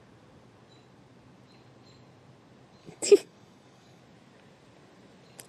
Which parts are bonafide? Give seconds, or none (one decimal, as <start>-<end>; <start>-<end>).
0.0-2.8; 4.0-5.5